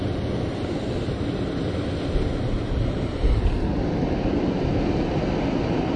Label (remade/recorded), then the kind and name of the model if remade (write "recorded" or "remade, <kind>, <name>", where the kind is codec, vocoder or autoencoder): recorded